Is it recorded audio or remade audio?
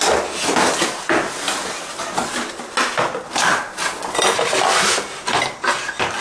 recorded